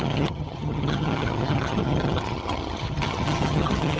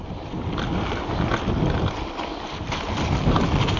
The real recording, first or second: second